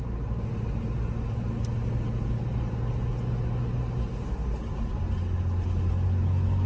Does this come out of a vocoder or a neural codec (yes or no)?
no